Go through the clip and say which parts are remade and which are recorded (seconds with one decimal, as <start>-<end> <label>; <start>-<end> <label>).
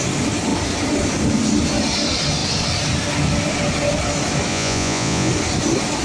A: 0.0-4.5 recorded; 4.5-5.3 remade; 5.3-6.0 recorded